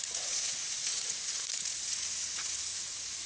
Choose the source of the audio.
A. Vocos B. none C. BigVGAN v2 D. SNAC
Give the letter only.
A